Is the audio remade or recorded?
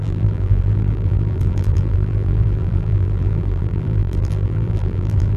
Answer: remade